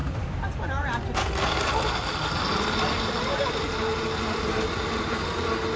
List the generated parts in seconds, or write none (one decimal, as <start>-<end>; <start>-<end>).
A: none